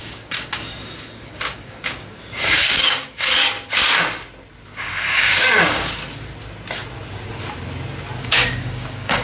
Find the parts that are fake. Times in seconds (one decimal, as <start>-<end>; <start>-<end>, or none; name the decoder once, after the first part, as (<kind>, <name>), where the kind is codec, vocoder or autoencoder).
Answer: 0.0-3.4 (codec, DAC); 4.8-6.0; 8.2-9.2